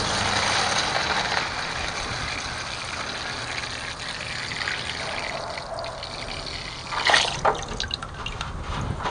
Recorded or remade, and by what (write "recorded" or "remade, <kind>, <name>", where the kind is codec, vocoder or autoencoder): recorded